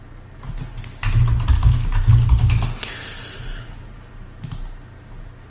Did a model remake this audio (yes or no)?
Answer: no